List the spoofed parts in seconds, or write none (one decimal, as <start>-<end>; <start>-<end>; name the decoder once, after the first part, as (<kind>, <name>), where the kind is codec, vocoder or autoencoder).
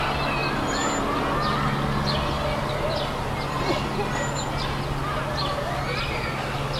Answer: none